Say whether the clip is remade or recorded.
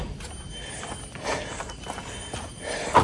recorded